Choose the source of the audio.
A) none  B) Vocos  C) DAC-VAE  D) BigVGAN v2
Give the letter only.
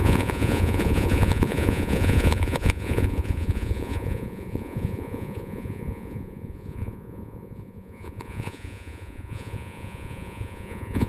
B